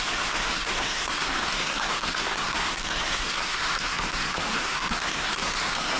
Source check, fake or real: fake